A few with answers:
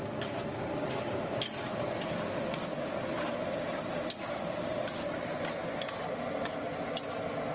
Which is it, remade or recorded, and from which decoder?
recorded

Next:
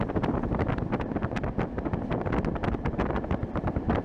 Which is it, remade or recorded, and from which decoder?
recorded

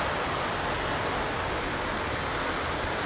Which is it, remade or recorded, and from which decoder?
recorded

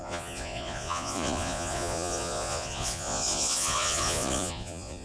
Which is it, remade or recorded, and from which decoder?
remade, vocoder, Vocos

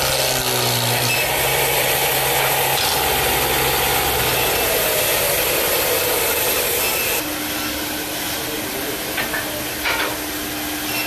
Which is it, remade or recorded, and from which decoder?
recorded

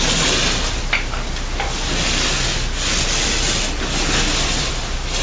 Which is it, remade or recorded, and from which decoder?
recorded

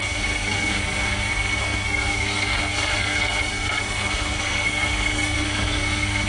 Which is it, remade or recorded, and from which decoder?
remade, codec, SNAC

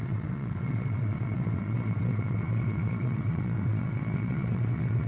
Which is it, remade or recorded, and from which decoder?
remade, vocoder, WaveNeXt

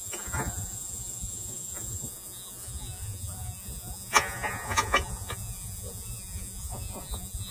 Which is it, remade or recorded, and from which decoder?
remade, vocoder, Vocos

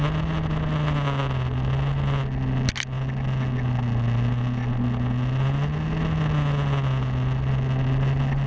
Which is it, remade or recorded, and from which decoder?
recorded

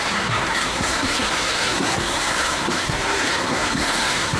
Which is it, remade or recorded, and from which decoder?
remade, codec, SNAC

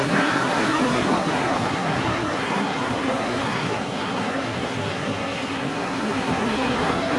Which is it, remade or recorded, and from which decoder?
remade, codec, SNAC